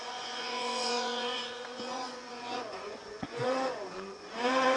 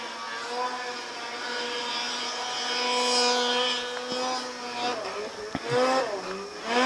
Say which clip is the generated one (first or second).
first